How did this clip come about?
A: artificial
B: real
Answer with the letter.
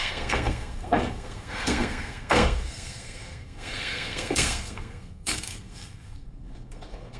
A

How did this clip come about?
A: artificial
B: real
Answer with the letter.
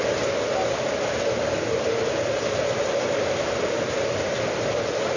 B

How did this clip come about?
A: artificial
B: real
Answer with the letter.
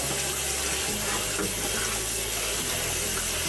B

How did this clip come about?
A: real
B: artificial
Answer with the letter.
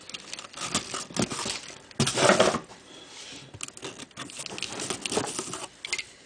A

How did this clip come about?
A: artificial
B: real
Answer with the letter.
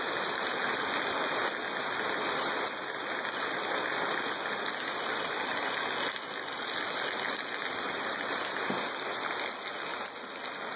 B